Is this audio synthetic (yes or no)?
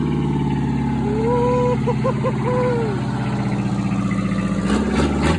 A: no